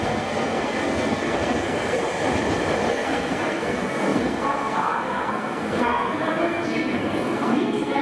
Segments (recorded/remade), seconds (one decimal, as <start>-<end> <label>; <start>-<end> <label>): 0.0-2.0 remade; 2.0-2.9 recorded; 2.9-8.0 remade